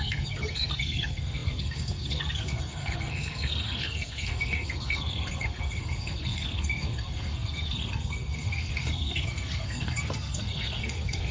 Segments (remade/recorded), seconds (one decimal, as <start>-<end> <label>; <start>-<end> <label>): 0.0-11.3 remade

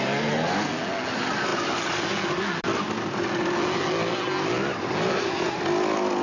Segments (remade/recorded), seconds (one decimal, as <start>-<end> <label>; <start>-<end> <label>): 0.0-6.2 recorded

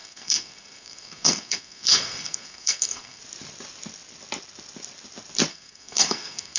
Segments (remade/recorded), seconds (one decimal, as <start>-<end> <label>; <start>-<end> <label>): 0.0-3.2 remade; 3.2-5.5 recorded; 5.5-6.6 remade

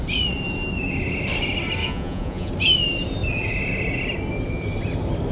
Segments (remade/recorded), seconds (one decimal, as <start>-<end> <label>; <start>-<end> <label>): 0.0-1.8 recorded; 1.8-2.5 remade; 2.5-5.3 recorded

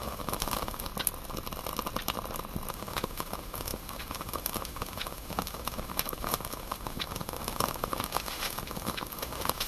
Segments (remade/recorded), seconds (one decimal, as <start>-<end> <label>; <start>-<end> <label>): 0.0-0.9 remade; 0.9-2.7 recorded; 2.7-9.7 remade

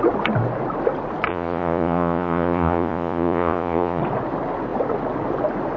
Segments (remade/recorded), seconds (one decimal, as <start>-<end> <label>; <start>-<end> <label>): 0.0-1.3 recorded; 1.3-4.0 remade; 4.0-5.8 recorded

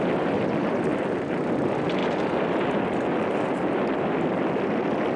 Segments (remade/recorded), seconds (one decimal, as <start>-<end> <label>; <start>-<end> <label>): 0.0-5.2 recorded

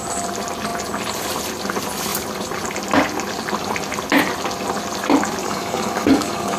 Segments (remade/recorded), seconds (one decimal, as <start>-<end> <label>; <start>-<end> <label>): 0.0-5.4 recorded; 5.4-6.6 remade